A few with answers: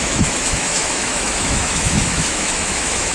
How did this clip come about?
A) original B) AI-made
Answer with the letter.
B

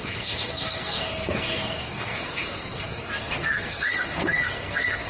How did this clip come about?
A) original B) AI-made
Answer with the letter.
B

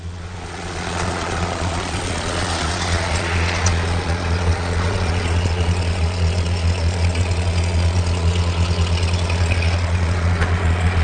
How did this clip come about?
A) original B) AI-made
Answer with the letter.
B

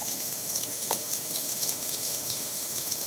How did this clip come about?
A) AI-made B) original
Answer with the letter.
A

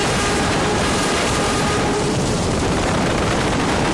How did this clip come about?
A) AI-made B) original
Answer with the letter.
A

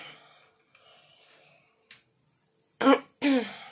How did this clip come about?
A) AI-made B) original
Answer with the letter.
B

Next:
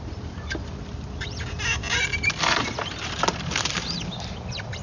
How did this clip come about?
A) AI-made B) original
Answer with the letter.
B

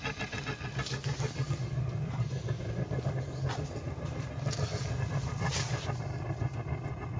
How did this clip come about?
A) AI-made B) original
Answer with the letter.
B